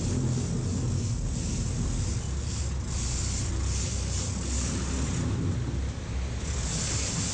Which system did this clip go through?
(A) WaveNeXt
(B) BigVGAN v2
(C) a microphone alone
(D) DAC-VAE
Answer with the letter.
C